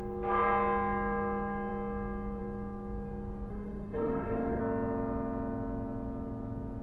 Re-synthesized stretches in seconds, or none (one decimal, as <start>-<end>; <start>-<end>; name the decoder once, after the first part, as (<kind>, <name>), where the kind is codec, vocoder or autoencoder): 3.5-4.6 (autoencoder, DAC-VAE)